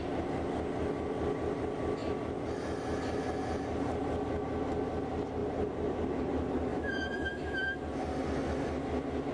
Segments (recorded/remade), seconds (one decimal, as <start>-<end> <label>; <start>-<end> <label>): 0.0-6.7 recorded; 6.7-7.8 remade; 7.8-9.3 recorded